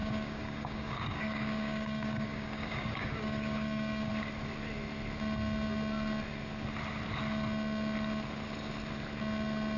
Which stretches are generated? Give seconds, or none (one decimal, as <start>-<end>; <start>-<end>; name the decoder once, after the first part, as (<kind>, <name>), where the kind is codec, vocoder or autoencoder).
0.0-4.1 (codec, DAC)